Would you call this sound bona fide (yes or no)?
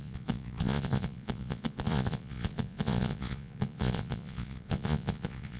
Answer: no